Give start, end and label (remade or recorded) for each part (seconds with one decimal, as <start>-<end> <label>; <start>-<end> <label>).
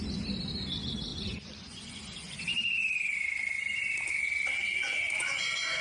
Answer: 0.0-1.1 recorded; 1.1-2.4 remade; 2.4-4.6 recorded; 4.6-5.8 remade